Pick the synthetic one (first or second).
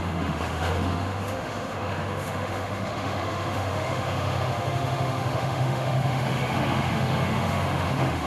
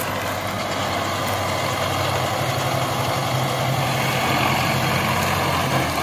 first